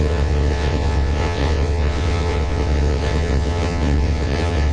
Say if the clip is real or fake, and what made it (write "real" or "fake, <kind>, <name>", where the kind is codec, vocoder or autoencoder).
fake, vocoder, WaveNeXt